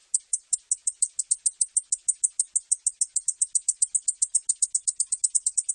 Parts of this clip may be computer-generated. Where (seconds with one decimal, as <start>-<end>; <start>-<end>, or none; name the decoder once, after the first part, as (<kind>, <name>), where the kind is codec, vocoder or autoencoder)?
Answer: none